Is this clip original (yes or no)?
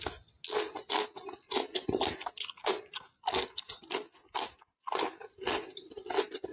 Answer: yes